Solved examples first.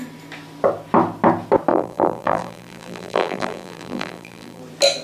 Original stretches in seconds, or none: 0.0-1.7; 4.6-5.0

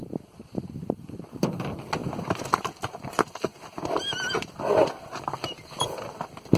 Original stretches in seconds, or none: 0.0-1.0

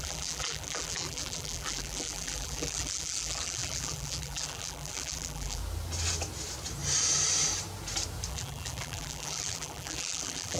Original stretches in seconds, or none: 5.6-8.3

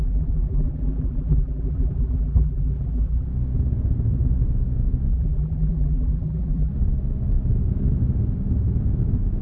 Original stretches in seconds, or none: 3.3-5.1; 6.7-9.4

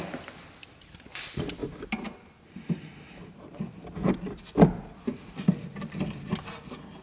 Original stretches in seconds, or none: 0.0-7.0

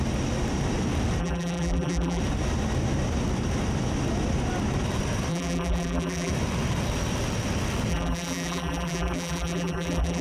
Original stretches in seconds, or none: 0.0-1.2; 2.2-5.3; 6.3-7.9

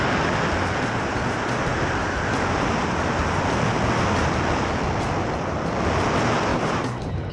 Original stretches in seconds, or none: 0.0-6.5

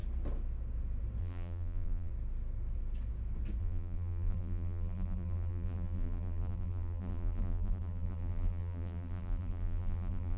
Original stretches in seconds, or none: 0.0-1.2; 2.1-3.6